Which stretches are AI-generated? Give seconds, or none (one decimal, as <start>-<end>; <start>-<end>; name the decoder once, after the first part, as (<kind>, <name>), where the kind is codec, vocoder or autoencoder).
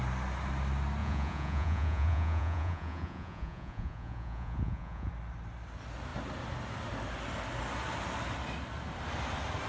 1.0-5.1 (vocoder, Vocos)